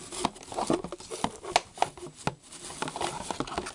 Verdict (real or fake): real